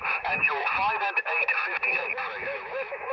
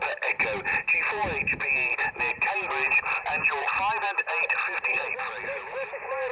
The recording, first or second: second